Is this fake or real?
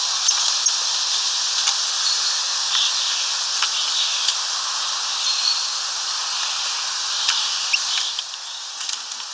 real